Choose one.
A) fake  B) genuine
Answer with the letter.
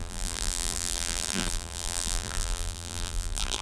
A